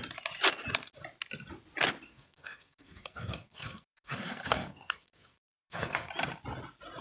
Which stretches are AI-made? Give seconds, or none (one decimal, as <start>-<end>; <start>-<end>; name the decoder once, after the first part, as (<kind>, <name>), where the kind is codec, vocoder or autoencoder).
2.1-6.1 (codec, SNAC)